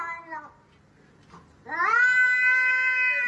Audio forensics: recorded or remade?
recorded